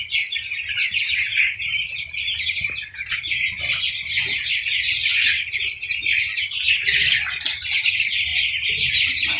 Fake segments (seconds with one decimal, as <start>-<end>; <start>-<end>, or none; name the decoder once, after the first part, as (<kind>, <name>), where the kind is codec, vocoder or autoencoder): none